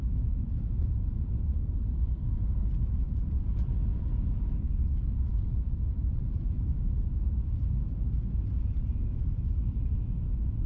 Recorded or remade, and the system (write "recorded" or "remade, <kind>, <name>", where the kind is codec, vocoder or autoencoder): remade, vocoder, BigVGAN v2